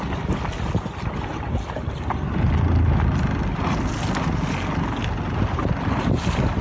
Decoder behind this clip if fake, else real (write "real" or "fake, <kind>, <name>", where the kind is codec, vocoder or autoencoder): real